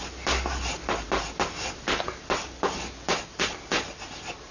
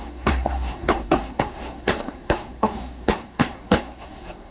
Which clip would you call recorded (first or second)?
first